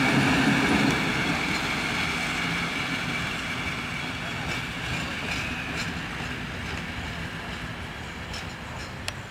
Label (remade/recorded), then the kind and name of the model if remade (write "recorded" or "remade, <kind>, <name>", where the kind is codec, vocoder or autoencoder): recorded